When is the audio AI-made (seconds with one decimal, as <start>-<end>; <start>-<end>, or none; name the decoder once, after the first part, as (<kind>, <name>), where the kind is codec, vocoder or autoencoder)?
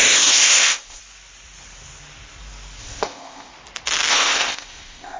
0.0-1.0 (codec, ZipCodec); 2.8-3.5; 4.1-5.2